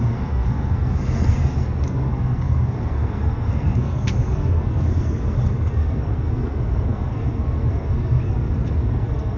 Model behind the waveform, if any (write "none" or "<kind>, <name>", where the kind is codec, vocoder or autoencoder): codec, SNAC